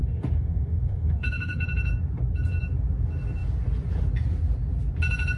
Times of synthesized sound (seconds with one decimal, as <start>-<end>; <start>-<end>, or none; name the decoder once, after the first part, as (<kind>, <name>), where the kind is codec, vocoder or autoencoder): 0.0-1.6 (autoencoder, DAC-VAE)